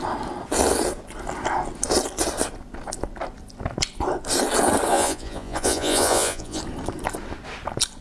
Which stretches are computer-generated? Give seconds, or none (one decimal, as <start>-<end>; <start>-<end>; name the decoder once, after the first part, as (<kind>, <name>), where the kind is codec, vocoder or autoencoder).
4.9-6.6 (vocoder, Vocos)